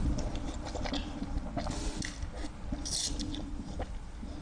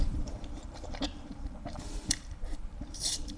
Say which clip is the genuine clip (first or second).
first